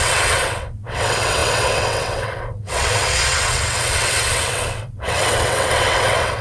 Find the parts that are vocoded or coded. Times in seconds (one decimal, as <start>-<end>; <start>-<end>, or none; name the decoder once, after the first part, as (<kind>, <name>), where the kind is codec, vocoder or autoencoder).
0.0-6.4 (vocoder, WaveNeXt)